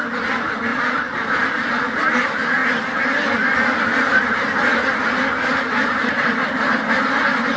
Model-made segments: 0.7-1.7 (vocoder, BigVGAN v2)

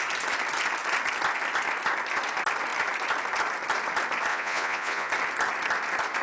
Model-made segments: 4.3-5.1 (vocoder, Vocos)

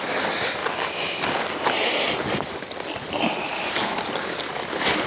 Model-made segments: none

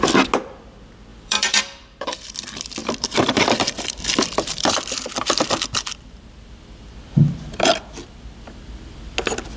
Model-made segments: 1.1-1.6 (vocoder, BigVGAN v2); 2.8-6.1

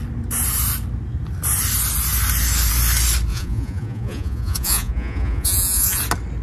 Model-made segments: 3.3-6.0 (vocoder, Vocos)

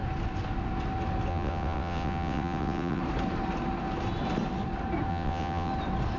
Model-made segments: 1.3-3.0 (vocoder, WaveNeXt); 5.1-5.7

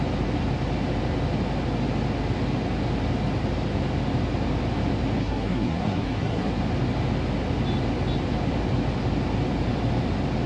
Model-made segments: 5.2-6.5 (codec, SNAC)